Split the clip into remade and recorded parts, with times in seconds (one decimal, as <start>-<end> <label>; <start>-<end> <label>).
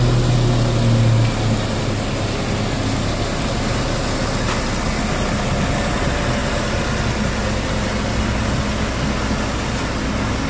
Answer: 0.0-10.5 recorded